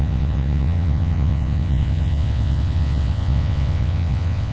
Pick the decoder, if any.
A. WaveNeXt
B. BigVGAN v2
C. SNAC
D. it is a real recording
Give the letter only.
A